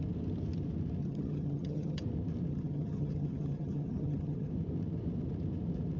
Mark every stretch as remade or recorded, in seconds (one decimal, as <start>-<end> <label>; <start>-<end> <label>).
0.0-1.0 recorded; 1.0-2.0 remade; 2.0-2.5 recorded; 2.5-4.5 remade; 4.5-6.0 recorded

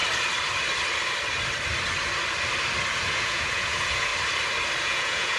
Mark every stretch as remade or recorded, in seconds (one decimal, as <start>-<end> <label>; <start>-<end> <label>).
0.0-2.9 recorded; 2.9-4.1 remade; 4.1-4.8 recorded; 4.8-5.4 remade

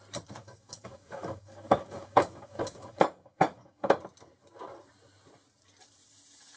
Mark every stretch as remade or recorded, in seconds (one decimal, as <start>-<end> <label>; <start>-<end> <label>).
0.0-0.4 recorded; 0.4-4.0 remade; 4.0-6.6 recorded

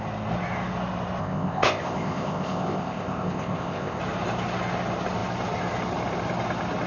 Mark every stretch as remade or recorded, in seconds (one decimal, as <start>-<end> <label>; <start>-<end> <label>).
0.0-1.2 recorded; 1.2-4.0 remade; 4.0-6.9 recorded

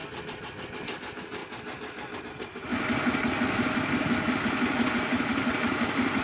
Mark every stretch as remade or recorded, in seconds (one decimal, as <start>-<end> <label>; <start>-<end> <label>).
0.0-1.0 recorded; 1.0-1.4 remade; 1.4-2.2 recorded; 2.2-2.7 remade; 2.7-4.9 recorded; 4.9-6.2 remade